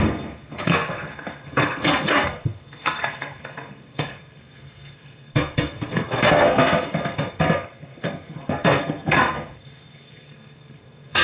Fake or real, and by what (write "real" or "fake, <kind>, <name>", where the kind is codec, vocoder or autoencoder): fake, codec, SNAC